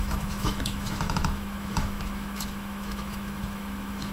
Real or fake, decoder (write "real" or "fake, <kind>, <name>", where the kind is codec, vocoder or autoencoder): fake, autoencoder, DAC-VAE